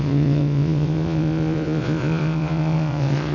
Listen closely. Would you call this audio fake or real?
fake